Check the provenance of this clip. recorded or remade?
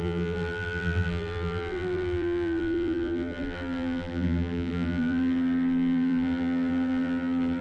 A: remade